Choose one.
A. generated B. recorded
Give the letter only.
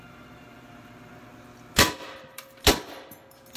A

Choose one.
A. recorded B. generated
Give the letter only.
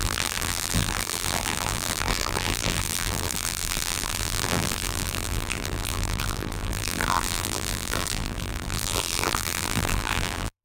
B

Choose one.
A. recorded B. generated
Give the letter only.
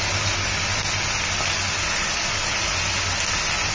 A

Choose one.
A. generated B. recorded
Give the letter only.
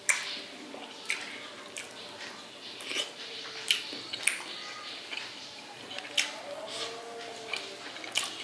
B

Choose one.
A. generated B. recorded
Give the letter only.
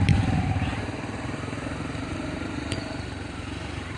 A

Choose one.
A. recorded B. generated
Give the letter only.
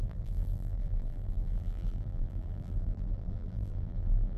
B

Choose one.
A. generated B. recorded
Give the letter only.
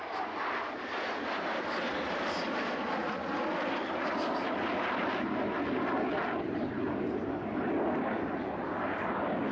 B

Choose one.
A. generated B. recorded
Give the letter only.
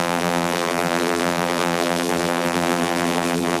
A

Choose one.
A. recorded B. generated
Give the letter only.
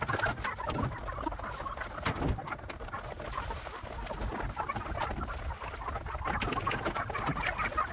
A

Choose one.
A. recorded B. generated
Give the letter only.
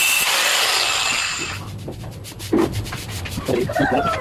A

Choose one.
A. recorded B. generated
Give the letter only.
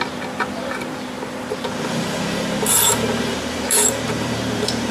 B